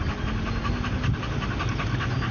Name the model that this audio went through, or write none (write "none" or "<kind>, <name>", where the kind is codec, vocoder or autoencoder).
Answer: none